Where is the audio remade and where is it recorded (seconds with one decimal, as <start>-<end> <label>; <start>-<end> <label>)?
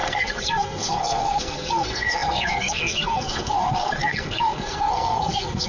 0.0-5.7 remade